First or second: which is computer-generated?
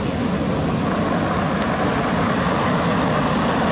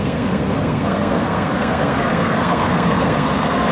second